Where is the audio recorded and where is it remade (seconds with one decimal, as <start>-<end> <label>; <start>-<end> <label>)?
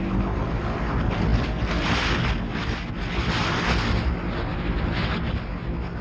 0.0-6.0 recorded